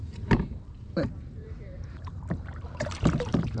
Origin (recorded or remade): remade